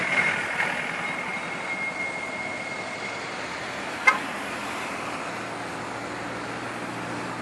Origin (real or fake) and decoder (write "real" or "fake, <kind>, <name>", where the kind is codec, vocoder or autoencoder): real